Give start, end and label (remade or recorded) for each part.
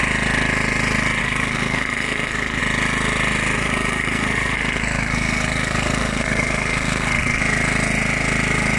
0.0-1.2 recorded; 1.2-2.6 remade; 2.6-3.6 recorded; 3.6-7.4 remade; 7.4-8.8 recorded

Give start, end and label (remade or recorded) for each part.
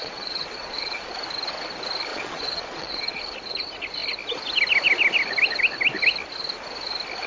0.0-1.1 remade; 1.1-2.1 recorded; 2.1-3.5 remade; 3.5-7.3 recorded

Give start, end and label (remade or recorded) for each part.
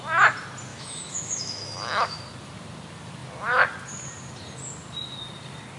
0.0-0.7 recorded; 0.7-2.2 remade; 2.2-5.8 recorded